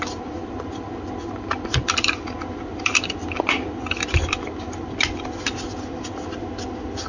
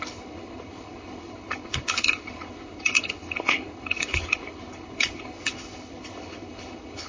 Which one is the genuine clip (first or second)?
first